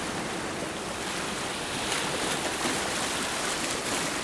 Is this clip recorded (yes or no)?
yes